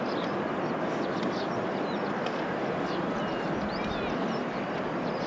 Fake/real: real